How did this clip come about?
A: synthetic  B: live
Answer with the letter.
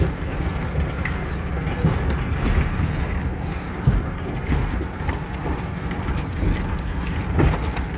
B